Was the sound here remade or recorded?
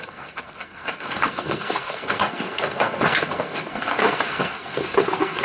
remade